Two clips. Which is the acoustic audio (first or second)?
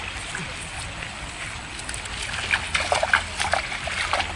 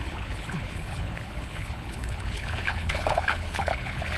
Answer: first